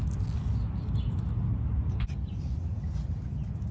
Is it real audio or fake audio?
real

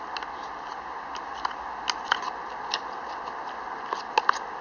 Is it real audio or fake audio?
real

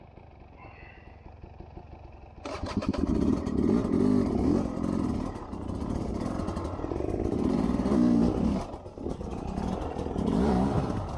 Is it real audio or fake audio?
real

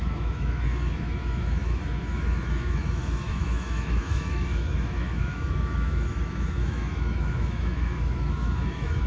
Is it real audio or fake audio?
fake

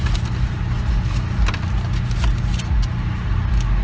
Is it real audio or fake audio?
real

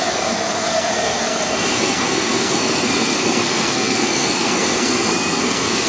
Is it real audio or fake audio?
fake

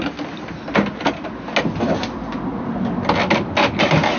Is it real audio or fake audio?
real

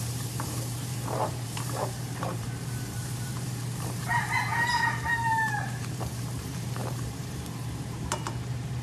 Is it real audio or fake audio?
fake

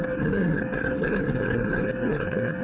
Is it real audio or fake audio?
fake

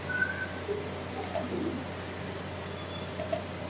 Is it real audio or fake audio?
real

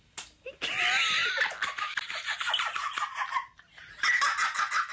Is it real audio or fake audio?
real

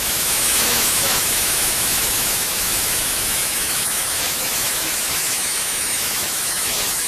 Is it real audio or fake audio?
fake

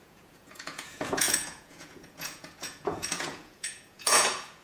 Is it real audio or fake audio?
fake